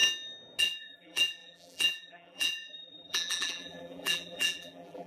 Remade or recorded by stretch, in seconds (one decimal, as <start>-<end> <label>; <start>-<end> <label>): 0.0-0.6 recorded; 0.6-5.1 remade

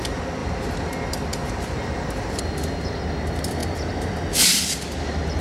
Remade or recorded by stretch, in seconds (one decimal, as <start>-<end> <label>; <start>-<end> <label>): 0.0-0.4 recorded; 0.4-0.9 remade; 0.9-1.4 recorded; 1.4-2.4 remade; 2.4-5.4 recorded

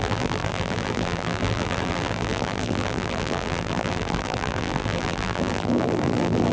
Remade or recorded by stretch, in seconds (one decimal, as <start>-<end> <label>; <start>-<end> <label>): 0.0-6.5 remade

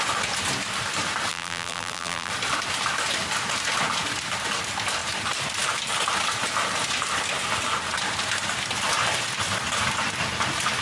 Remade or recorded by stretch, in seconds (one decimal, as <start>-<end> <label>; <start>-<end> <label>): 0.0-1.3 recorded; 1.3-2.3 remade; 2.3-10.8 recorded

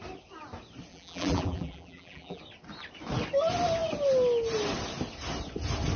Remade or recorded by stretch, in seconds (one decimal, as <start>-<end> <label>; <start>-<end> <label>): 0.0-0.9 recorded; 0.9-2.4 remade; 2.4-6.0 recorded

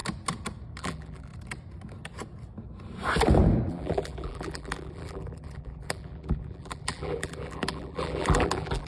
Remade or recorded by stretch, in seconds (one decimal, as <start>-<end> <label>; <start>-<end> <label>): 0.0-0.8 recorded; 0.8-1.3 remade; 1.3-3.7 recorded; 3.7-8.9 remade